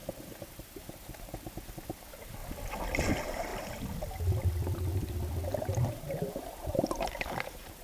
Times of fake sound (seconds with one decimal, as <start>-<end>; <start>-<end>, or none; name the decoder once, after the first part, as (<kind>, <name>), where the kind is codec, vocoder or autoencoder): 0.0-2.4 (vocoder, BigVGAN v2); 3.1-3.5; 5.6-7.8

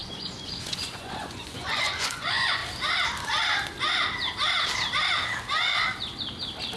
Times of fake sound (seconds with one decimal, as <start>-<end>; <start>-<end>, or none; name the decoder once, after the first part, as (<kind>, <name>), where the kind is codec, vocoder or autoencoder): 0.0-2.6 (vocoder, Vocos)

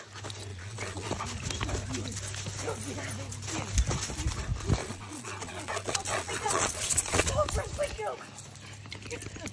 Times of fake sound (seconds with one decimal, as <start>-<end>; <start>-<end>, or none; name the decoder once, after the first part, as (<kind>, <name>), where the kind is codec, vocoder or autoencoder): 0.5-1.1 (vocoder, Vocos); 4.8-7.3

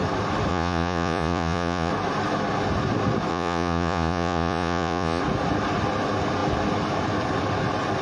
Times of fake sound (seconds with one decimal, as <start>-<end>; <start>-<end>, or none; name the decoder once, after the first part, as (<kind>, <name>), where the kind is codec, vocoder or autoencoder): 0.5-1.9 (vocoder, Vocos); 3.3-5.2

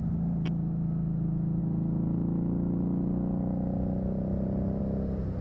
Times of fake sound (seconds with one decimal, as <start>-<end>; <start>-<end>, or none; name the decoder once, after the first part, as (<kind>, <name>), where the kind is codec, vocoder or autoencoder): none

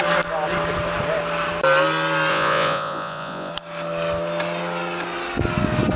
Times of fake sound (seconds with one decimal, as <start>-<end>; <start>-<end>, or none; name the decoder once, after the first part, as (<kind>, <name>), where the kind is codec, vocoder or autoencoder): 2.3-3.5 (vocoder, Vocos)

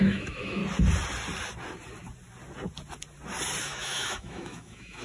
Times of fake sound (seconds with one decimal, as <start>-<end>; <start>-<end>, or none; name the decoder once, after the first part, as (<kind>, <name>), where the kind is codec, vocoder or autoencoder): 0.0-0.6 (autoencoder, DAC-VAE); 3.6-5.0